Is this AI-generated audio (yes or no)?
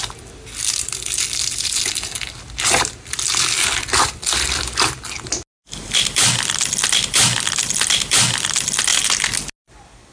no